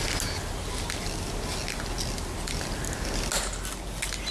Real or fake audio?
real